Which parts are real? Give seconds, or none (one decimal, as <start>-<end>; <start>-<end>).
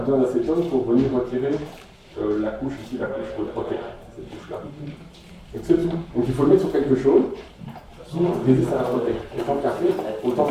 0.0-10.5